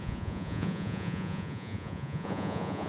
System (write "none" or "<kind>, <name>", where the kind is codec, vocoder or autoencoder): vocoder, Vocos